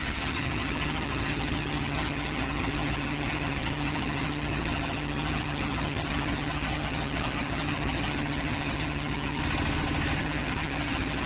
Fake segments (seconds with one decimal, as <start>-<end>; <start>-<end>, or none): 0.0-9.4; 10.2-11.3